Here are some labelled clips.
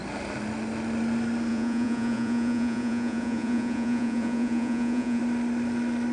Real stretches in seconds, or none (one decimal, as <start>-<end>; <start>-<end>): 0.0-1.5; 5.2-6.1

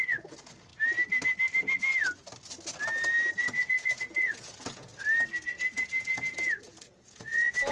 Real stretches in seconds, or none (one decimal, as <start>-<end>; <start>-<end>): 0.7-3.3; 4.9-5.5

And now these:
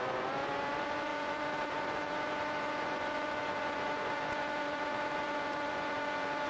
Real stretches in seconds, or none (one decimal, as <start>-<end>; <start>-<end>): none

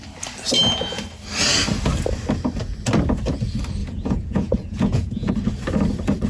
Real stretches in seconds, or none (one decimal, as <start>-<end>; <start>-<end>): 0.0-3.8; 5.3-6.3